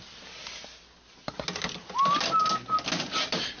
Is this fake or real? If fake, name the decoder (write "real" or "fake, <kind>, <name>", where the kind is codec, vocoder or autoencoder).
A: real